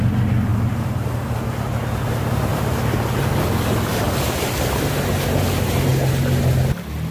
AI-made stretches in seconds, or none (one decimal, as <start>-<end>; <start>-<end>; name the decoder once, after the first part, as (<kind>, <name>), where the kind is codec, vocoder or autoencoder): 0.5-1.1 (vocoder, BigVGAN v2); 2.5-3.3; 3.9-4.5